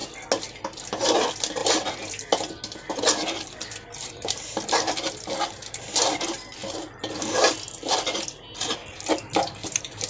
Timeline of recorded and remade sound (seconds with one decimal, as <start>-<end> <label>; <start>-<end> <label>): 0.0-0.9 recorded; 0.9-1.6 remade; 1.6-4.1 recorded; 4.1-6.6 remade; 6.6-7.9 recorded; 7.9-10.1 remade